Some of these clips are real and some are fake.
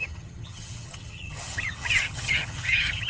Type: fake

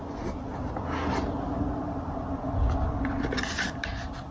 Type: real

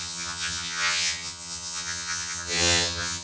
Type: fake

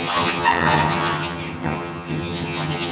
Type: fake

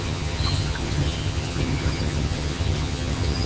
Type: fake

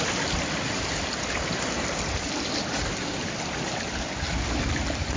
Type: real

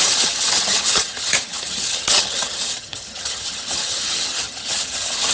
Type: fake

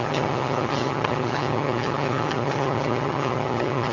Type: fake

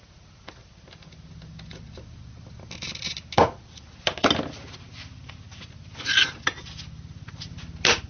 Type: real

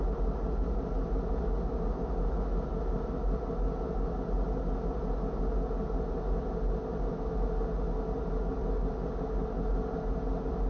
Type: real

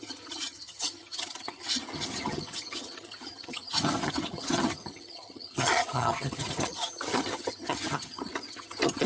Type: fake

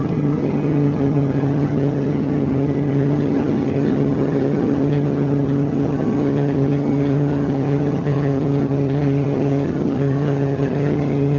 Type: fake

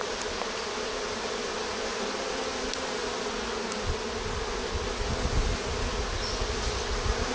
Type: real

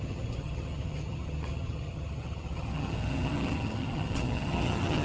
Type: fake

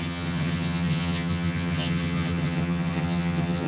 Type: fake